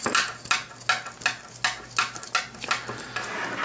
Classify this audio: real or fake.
real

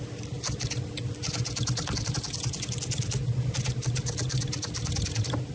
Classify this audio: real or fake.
real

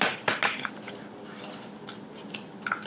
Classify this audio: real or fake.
real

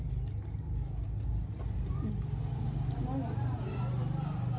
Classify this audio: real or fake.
real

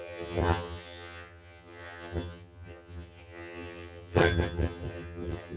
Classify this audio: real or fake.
fake